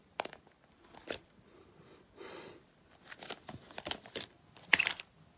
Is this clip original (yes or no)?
yes